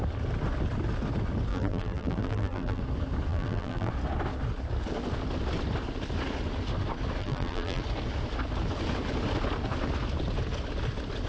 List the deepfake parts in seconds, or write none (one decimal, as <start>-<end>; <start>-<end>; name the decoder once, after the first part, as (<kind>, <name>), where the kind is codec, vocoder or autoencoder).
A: 1.5-2.8 (vocoder, BigVGAN v2); 3.3-3.9; 7.2-7.8